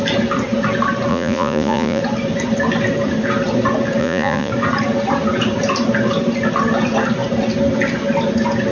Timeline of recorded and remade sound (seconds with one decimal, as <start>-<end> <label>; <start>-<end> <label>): 0.0-1.1 recorded; 1.1-2.0 remade; 2.0-4.0 recorded; 4.0-4.5 remade; 4.5-8.7 recorded